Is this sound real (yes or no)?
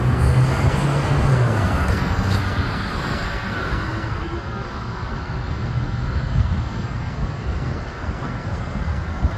no